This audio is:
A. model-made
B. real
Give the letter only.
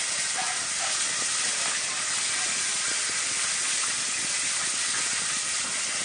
B